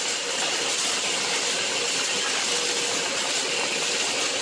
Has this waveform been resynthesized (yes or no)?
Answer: no